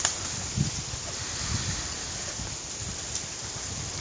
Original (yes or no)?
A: yes